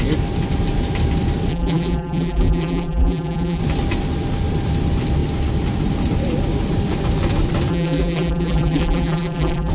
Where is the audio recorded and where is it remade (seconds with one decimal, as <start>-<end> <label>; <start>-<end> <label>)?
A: 0.0-1.5 recorded; 1.5-3.6 remade; 3.6-7.7 recorded; 7.7-9.7 remade